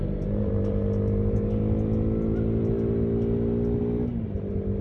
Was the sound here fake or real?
real